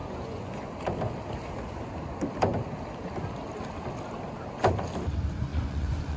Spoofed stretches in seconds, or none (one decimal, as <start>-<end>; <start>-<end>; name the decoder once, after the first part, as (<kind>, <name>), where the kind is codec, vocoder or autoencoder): 0.0-0.7 (vocoder, Vocos); 5.5-6.2

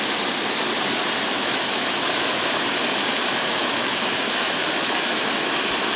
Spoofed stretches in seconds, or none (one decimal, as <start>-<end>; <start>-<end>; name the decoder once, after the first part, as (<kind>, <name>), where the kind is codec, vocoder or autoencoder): 1.3-2.4 (autoencoder, DAC-VAE); 3.2-5.6

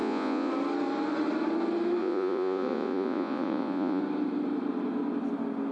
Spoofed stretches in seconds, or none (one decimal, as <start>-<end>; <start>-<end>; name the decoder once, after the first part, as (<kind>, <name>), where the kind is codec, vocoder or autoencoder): 0.0-0.5 (vocoder, Vocos); 2.0-4.0

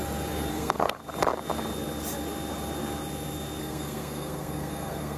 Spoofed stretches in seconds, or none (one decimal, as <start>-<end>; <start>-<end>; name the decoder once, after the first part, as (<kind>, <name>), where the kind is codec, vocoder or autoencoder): 0.5-1.0 (codec, SNAC); 3.6-5.2

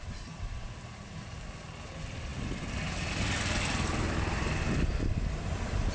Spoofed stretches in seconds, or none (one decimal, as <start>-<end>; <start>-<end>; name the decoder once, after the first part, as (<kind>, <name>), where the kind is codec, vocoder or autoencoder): none